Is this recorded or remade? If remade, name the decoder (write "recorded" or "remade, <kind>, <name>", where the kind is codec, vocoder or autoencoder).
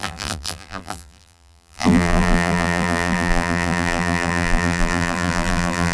remade, vocoder, BigVGAN v2